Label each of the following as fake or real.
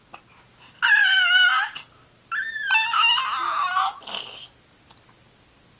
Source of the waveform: real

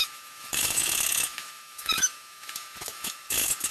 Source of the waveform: fake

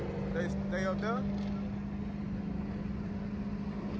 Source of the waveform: real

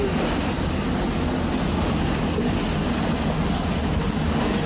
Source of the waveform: real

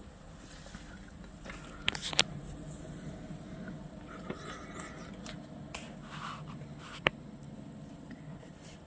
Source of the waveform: real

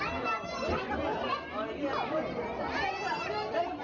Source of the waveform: real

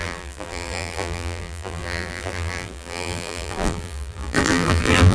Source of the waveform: fake